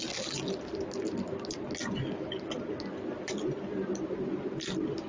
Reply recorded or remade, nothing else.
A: recorded